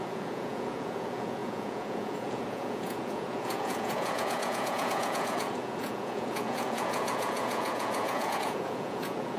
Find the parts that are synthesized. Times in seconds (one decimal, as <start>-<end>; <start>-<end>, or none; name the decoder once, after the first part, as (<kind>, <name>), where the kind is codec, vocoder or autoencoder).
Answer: 0.0-9.4 (vocoder, Vocos)